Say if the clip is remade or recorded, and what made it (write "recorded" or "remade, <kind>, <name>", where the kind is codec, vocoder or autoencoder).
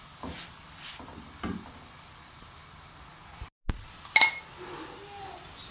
recorded